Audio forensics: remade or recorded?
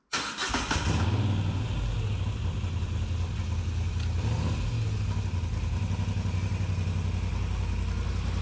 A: recorded